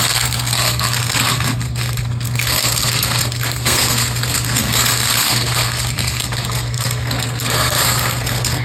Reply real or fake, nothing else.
fake